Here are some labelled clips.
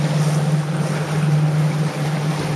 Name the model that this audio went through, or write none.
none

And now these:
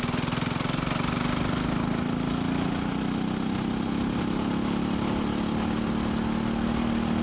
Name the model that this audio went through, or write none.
none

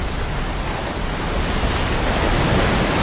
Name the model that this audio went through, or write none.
none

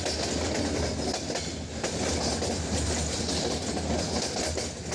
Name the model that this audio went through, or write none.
none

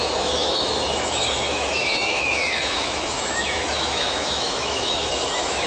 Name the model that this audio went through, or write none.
autoencoder, DAC-VAE